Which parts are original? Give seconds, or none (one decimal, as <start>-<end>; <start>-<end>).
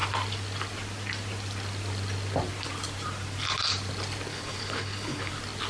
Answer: 0.0-4.3; 5.3-5.7